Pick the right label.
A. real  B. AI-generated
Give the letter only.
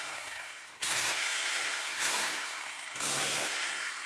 B